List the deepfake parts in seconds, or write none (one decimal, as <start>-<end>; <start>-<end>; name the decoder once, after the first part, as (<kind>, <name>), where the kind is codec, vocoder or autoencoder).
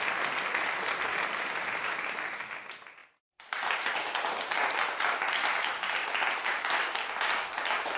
none